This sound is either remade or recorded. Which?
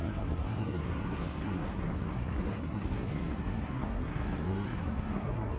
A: remade